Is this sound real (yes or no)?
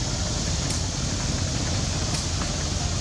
yes